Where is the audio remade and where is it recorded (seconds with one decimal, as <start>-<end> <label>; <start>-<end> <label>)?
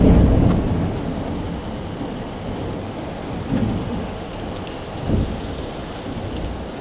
0.0-3.8 recorded; 3.8-4.3 remade; 4.3-6.8 recorded